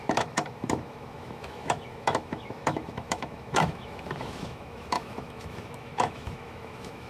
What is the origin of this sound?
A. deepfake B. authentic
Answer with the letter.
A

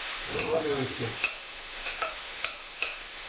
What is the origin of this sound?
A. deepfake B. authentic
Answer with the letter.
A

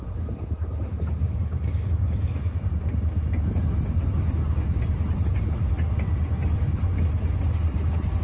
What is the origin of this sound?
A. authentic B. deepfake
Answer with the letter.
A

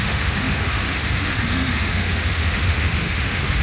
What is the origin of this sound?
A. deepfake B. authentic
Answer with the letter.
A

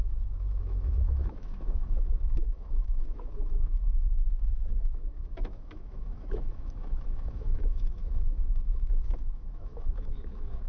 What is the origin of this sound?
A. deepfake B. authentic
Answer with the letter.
A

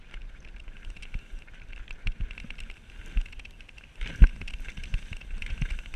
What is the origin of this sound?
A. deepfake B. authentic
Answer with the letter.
B